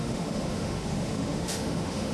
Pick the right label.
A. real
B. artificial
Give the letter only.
B